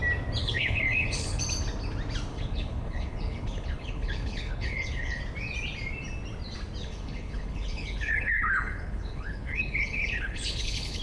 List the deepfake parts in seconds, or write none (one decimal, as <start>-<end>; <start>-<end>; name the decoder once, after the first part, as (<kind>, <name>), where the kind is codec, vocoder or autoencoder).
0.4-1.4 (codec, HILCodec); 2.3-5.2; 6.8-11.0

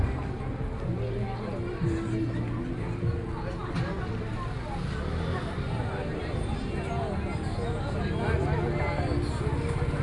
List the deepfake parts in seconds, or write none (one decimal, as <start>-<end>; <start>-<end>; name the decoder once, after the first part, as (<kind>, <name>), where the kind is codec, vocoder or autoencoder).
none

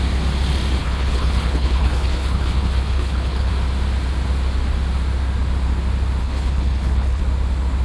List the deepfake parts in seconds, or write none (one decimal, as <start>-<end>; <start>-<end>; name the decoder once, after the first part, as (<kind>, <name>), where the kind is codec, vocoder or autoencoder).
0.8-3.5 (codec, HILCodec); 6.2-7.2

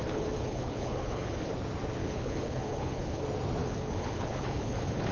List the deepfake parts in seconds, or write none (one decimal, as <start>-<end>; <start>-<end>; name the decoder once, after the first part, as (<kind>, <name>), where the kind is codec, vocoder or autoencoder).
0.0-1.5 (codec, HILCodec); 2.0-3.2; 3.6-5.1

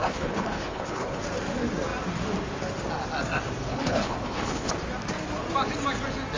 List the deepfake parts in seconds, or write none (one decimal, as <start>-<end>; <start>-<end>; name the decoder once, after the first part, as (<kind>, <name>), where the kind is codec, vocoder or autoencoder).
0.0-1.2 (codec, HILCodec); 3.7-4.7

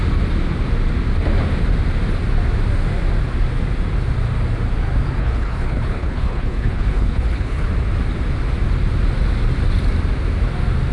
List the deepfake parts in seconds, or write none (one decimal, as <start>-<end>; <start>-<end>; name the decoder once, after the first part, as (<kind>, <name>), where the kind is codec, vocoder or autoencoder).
5.2-7.7 (codec, HILCodec)

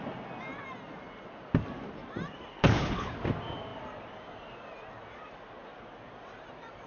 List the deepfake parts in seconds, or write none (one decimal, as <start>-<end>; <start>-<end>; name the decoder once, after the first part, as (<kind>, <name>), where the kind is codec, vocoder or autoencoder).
2.5-3.1 (codec, HILCodec)

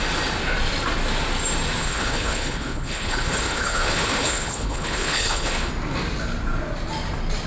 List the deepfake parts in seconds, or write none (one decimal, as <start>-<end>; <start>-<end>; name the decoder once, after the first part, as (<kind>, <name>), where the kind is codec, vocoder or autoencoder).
1.8-5.7 (codec, HILCodec)